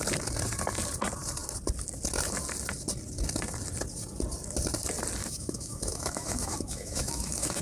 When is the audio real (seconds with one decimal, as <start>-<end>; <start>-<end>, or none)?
0.0-5.2